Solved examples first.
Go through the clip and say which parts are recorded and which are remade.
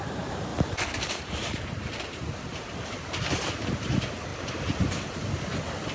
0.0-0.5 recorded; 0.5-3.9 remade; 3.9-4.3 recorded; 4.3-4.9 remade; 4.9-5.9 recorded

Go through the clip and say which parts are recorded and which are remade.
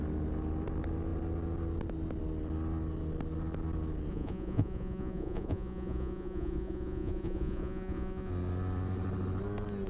0.0-4.1 recorded; 4.1-8.3 remade; 8.3-9.9 recorded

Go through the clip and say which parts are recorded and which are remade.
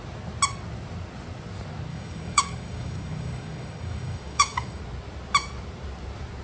0.0-1.9 recorded; 1.9-4.8 remade; 4.8-6.4 recorded